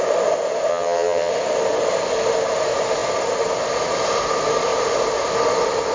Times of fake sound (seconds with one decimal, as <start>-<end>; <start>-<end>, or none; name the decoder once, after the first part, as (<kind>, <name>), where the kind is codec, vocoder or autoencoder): 0.7-1.3 (vocoder, HiFi-GAN)

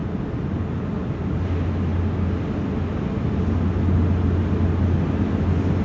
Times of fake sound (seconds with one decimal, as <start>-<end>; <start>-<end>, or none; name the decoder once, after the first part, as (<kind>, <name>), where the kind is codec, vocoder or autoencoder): none

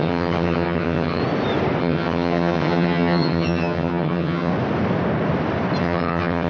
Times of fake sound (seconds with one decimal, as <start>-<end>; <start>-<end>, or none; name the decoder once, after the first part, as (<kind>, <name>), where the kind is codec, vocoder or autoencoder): 0.0-1.2 (vocoder, HiFi-GAN); 1.8-4.5; 5.8-6.5

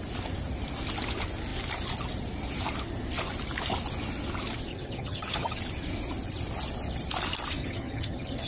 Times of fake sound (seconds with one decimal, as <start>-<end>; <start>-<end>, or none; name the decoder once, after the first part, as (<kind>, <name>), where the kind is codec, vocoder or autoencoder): 4.7-5.6 (vocoder, HiFi-GAN); 7.6-8.5